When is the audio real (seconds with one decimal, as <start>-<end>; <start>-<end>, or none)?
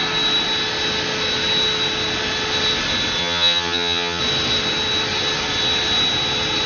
0.0-3.2; 4.2-6.7